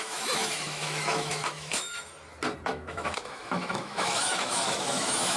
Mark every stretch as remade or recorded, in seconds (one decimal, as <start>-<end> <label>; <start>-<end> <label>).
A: 0.0-2.1 remade; 2.1-2.7 recorded; 2.7-5.4 remade